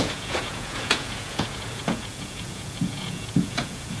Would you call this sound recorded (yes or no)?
no